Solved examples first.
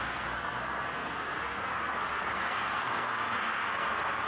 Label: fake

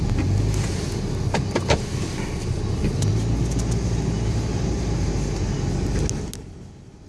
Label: real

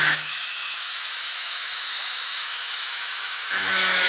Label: fake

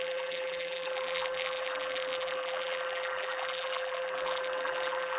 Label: fake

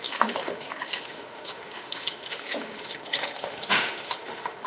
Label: fake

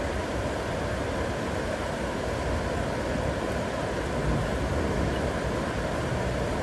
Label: real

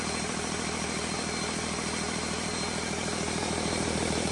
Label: fake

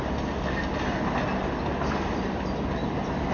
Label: real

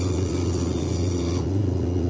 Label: fake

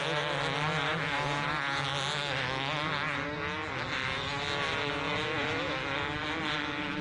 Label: real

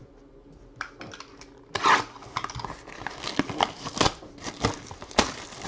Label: real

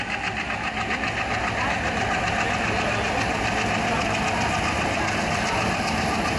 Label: real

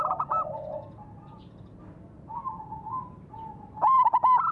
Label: real